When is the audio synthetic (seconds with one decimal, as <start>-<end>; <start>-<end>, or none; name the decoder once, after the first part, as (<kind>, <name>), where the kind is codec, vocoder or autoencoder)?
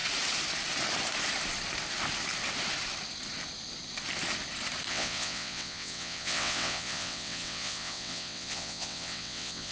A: 4.9-9.7 (vocoder, WaveNeXt)